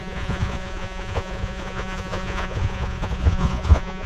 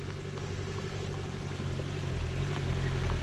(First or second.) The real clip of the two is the second